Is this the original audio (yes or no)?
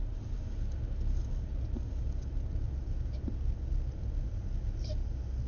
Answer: yes